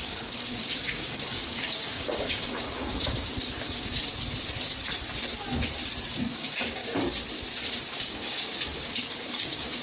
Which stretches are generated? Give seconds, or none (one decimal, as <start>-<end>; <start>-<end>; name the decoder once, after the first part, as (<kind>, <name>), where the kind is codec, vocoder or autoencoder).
0.0-4.0 (codec, DAC); 6.3-6.8; 8.0-9.8